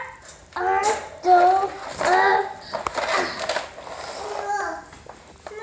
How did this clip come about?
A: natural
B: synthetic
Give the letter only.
A